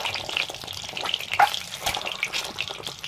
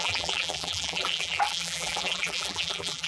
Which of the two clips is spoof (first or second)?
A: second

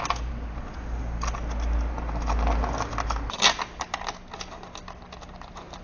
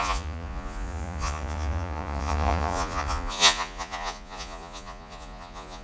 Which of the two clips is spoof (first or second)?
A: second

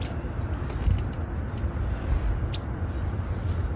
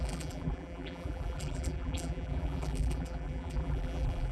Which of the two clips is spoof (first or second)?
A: second